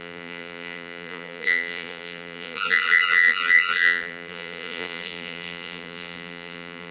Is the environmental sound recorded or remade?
remade